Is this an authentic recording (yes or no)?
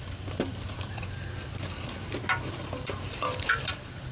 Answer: no